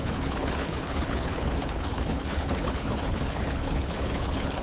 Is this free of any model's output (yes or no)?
no